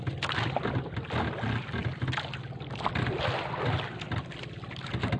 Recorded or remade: recorded